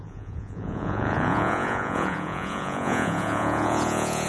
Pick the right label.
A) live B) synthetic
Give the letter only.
B